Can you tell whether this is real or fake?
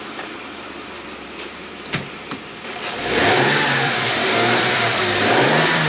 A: fake